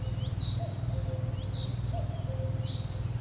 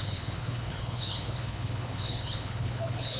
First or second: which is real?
first